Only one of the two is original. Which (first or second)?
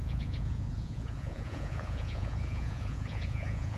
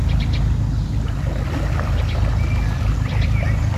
second